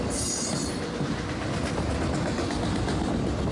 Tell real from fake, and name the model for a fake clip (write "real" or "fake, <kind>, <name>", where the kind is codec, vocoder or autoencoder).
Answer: real